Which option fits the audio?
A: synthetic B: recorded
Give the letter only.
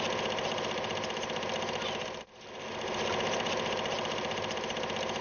B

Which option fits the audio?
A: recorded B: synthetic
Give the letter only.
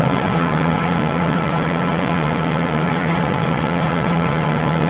B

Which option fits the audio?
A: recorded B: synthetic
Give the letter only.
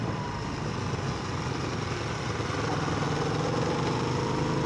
A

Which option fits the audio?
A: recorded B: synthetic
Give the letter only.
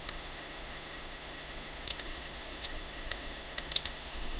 B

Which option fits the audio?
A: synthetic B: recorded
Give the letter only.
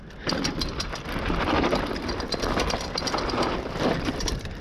A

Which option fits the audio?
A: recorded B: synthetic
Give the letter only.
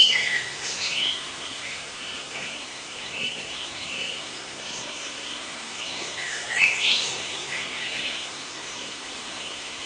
B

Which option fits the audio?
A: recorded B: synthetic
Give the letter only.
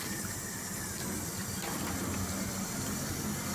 A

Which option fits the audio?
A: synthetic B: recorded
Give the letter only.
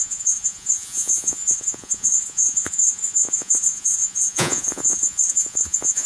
A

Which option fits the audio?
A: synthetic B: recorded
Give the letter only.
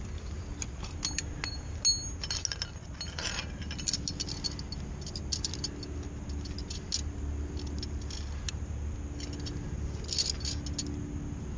B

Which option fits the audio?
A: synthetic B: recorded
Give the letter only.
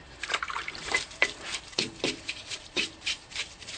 A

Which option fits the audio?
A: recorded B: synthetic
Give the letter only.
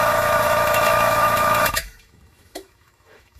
B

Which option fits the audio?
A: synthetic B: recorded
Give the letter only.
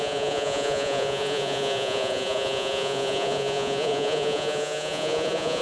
A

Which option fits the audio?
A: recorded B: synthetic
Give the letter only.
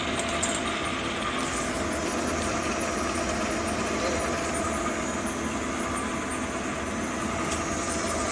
A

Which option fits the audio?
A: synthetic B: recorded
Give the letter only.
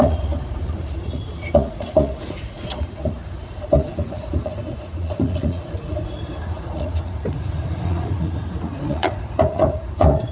A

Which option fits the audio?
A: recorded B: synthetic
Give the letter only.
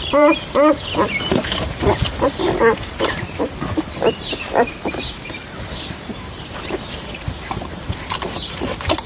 B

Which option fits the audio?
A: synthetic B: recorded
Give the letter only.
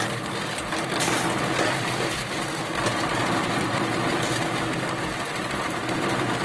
B